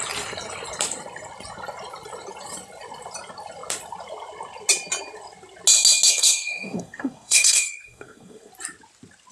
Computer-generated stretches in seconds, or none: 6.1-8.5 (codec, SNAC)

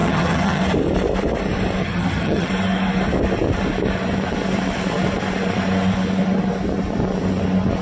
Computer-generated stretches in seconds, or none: 0.0-0.6 (vocoder, HiFi-GAN); 1.8-2.5